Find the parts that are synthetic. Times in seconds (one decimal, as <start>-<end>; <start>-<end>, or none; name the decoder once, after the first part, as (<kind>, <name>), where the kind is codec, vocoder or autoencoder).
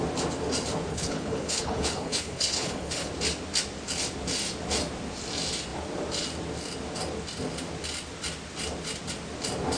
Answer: 0.9-3.1 (codec, HILCodec)